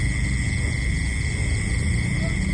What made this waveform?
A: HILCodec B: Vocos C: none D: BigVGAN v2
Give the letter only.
C